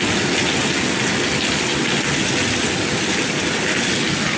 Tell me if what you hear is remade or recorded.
recorded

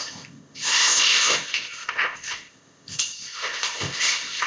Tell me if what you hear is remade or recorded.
remade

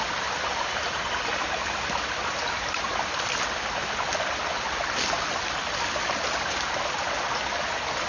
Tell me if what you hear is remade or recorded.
recorded